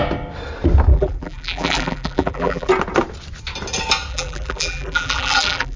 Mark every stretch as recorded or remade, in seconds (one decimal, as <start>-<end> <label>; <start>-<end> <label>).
0.0-0.9 recorded; 0.9-2.7 remade; 2.7-4.1 recorded; 4.1-5.8 remade